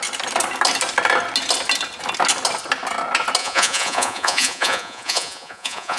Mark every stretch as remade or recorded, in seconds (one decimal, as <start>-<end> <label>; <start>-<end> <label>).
0.0-3.4 recorded; 3.4-6.0 remade